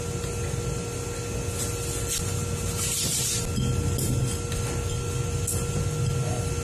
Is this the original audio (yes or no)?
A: yes